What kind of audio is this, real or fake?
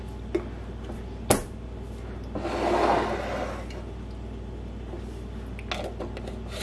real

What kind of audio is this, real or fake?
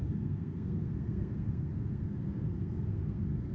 fake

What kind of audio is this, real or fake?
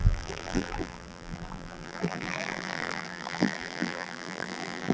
fake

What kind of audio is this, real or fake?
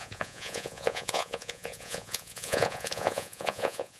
fake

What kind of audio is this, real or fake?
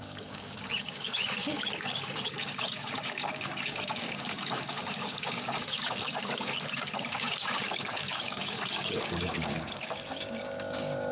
fake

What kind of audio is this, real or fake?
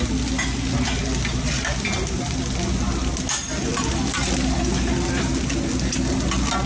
real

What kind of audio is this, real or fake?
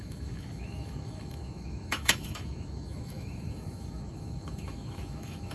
fake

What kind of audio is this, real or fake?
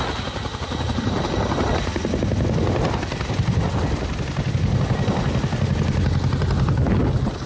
real